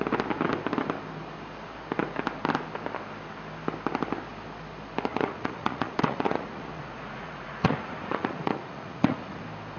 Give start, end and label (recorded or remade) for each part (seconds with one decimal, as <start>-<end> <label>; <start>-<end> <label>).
0.0-5.1 recorded; 5.1-9.4 remade; 9.4-9.8 recorded